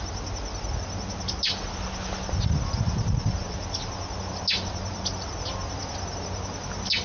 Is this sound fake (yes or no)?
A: no